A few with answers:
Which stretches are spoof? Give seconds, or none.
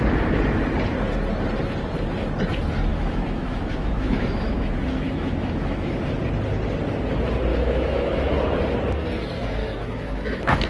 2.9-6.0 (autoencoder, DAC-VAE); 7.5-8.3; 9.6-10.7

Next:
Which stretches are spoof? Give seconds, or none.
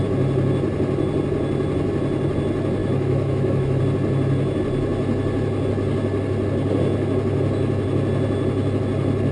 2.8-3.8 (autoencoder, DAC-VAE)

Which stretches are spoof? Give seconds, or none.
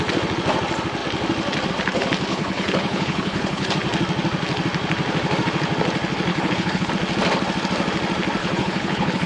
2.3-3.7 (codec, HILCodec); 6.3-6.9; 8.4-9.3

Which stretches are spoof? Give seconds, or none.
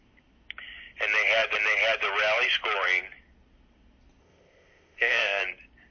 4.2-5.4 (codec, ZipCodec)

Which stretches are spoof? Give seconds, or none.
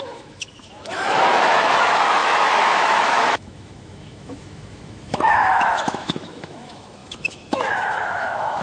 0.0-8.6 (autoencoder, DAC-VAE)